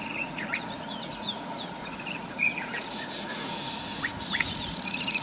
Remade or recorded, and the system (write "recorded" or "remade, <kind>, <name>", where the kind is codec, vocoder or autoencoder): remade, vocoder, Vocos